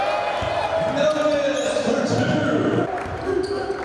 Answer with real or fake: real